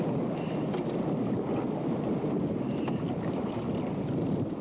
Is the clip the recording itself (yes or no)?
yes